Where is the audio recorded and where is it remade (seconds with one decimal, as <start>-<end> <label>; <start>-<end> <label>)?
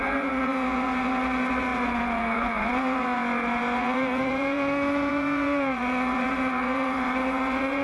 0.0-7.8 remade